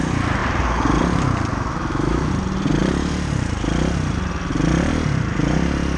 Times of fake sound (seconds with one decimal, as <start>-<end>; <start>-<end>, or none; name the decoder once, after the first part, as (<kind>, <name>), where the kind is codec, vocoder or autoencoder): 1.5-2.3 (autoencoder, DAC-VAE)